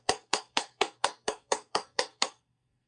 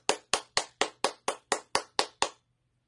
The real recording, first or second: second